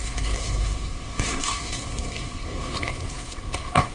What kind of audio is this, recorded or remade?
remade